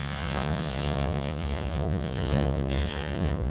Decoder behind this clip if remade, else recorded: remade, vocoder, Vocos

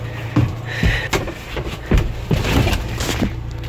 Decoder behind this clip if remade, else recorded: recorded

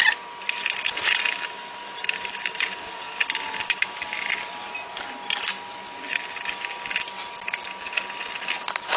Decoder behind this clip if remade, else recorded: recorded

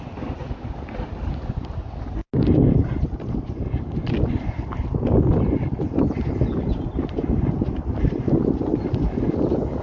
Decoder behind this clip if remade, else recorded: recorded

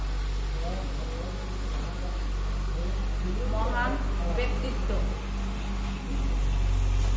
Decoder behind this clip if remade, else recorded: recorded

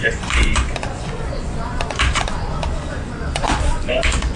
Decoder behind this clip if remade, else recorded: remade, vocoder, Vocos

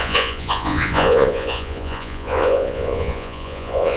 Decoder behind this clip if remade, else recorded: remade, vocoder, Vocos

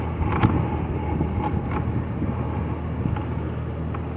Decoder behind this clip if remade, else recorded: recorded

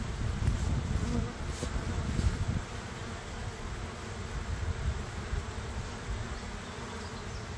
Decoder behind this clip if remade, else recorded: recorded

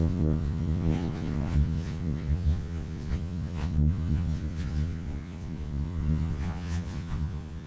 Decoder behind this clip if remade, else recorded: remade, vocoder, Vocos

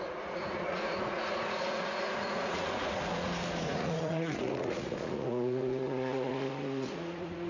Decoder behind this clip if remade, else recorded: remade, vocoder, Vocos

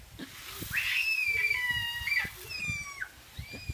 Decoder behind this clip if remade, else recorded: recorded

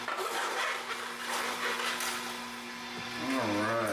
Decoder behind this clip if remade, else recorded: recorded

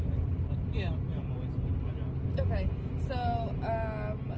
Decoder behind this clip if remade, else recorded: recorded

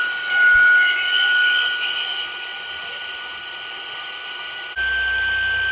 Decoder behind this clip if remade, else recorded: recorded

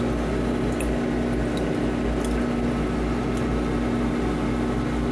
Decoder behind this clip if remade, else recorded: recorded